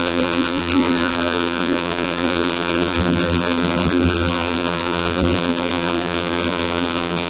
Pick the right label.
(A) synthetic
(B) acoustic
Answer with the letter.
A